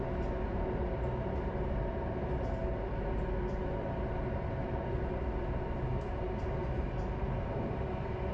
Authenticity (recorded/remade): recorded